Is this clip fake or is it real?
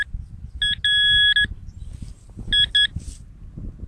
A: real